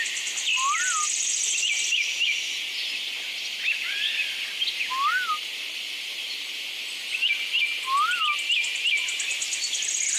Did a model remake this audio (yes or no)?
no